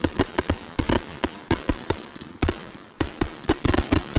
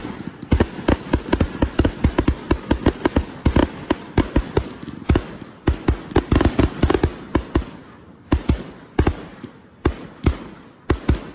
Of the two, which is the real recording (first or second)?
second